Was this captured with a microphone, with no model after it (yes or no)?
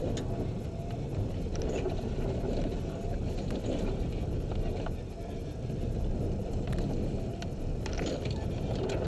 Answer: yes